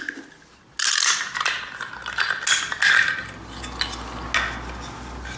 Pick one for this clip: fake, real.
real